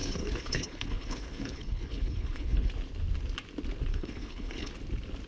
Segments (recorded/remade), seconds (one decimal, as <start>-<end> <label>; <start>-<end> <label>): 0.0-2.7 remade; 2.7-3.9 recorded; 3.9-4.7 remade; 4.7-5.3 recorded